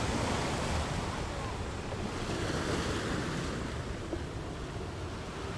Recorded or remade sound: recorded